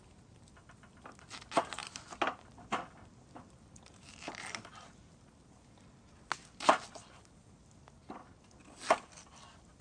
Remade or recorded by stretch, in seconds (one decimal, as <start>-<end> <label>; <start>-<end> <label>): 0.0-9.8 recorded